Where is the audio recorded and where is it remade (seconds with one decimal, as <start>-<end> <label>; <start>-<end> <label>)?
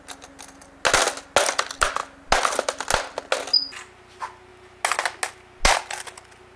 0.0-6.6 recorded